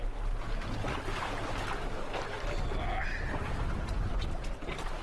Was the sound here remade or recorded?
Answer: recorded